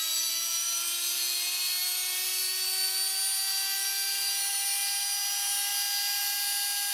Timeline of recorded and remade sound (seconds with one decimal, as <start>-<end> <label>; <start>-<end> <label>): 0.0-6.9 recorded